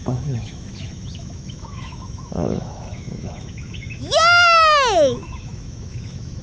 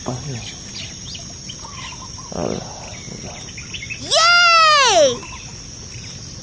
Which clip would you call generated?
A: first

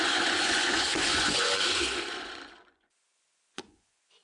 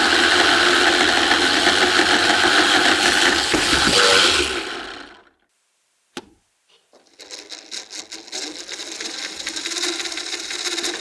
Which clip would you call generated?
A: first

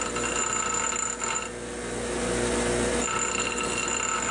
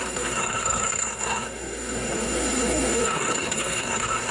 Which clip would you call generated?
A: second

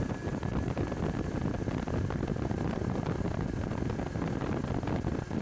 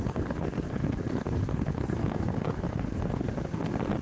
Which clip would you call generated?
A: second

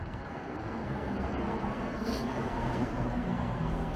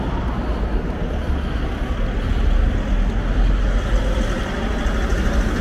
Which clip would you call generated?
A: first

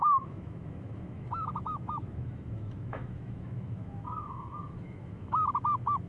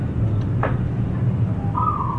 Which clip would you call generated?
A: first